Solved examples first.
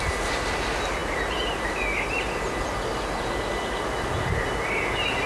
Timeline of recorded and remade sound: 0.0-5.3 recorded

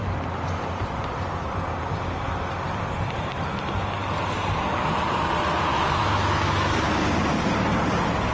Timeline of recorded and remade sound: 0.0-5.7 recorded; 5.7-6.8 remade; 6.8-8.3 recorded

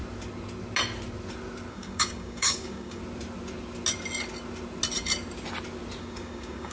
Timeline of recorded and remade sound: 0.0-1.7 recorded; 1.7-3.0 remade; 3.0-6.0 recorded; 6.0-6.7 remade

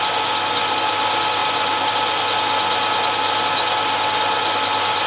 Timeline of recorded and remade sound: 0.0-5.1 recorded